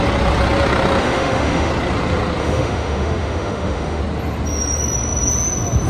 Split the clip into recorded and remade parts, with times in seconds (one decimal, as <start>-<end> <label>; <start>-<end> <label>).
0.0-1.0 recorded; 1.0-1.7 remade; 1.7-2.4 recorded; 2.4-4.0 remade; 4.0-5.9 recorded